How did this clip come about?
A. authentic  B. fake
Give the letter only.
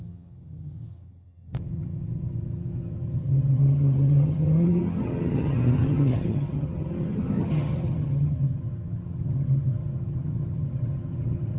B